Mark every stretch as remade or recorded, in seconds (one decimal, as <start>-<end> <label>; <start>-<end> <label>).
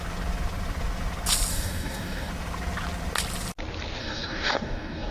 0.0-1.5 recorded; 1.5-2.3 remade; 2.3-4.0 recorded; 4.0-5.1 remade